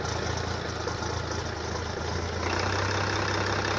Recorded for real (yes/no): yes